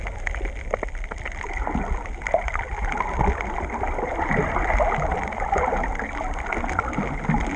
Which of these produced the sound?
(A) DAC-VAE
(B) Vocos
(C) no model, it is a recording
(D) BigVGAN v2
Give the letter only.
C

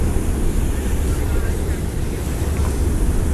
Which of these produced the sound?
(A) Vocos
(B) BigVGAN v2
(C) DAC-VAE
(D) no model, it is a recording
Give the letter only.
B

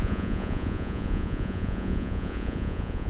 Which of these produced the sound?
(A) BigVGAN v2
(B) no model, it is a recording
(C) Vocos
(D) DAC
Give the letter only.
C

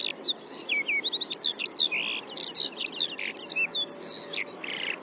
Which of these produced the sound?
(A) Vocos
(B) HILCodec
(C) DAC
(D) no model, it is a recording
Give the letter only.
D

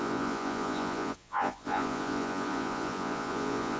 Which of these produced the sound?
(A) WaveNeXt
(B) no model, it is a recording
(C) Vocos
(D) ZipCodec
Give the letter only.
C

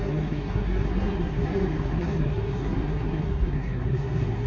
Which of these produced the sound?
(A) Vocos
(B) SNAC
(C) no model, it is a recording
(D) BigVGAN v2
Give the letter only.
B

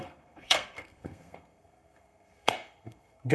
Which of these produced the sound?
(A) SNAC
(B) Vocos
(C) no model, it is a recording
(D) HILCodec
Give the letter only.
A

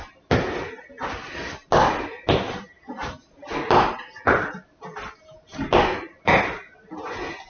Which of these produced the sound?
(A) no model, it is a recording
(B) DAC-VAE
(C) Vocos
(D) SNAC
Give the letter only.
A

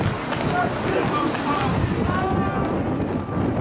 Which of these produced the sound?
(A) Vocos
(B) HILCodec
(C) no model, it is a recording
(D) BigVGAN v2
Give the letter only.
C